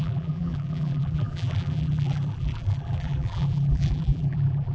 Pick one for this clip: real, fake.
fake